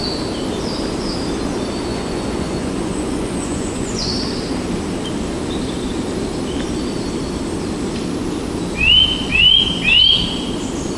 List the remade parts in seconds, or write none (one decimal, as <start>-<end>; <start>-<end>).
1.9-4.1